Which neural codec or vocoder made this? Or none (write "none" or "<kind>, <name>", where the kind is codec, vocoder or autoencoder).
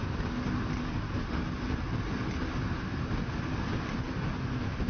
none